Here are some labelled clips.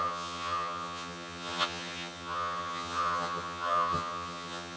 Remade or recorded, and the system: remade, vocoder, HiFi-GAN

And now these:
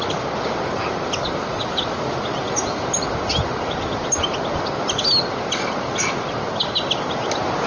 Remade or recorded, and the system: recorded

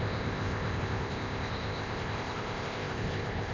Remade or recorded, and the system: remade, codec, ZipCodec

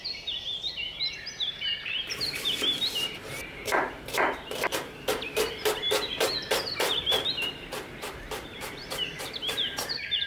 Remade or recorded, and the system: remade, vocoder, BigVGAN v2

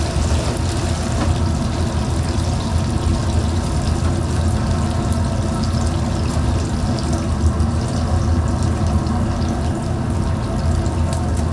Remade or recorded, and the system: recorded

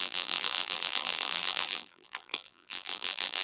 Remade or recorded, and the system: remade, vocoder, BigVGAN v2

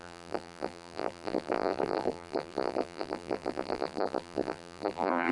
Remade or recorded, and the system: remade, vocoder, BigVGAN v2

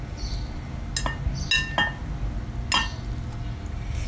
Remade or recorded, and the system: recorded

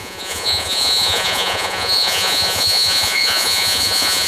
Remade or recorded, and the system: remade, vocoder, Vocos